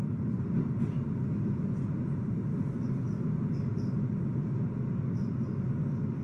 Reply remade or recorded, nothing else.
remade